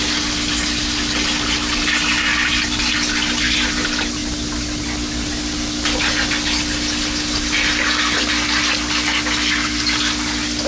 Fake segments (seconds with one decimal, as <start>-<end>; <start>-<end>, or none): none